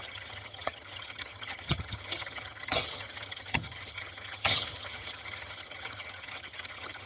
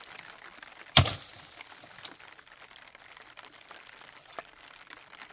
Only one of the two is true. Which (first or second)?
second